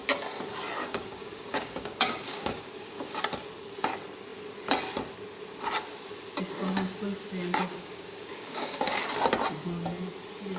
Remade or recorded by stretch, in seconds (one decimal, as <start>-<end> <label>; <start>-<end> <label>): 0.0-0.8 recorded; 0.8-3.2 remade; 3.2-7.7 recorded; 7.7-9.0 remade; 9.0-10.6 recorded